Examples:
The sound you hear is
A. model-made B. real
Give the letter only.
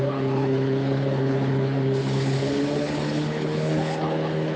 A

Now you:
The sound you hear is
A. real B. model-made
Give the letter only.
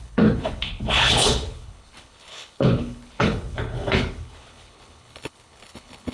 B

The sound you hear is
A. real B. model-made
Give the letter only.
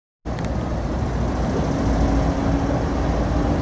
A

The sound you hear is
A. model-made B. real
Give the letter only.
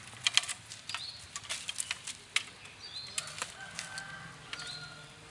B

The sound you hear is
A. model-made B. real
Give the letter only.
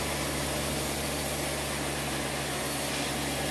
B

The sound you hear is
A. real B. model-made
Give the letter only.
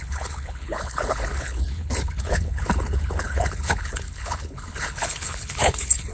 B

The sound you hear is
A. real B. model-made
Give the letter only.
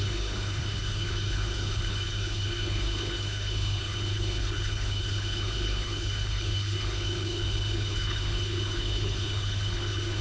B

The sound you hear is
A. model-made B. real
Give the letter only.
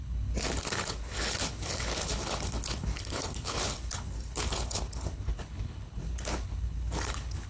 A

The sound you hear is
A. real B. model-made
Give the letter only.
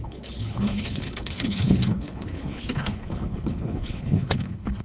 B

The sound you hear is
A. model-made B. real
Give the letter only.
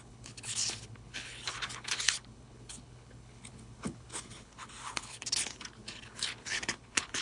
A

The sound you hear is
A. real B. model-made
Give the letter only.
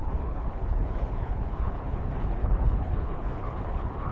B